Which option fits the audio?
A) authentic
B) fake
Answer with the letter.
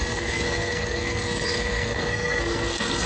B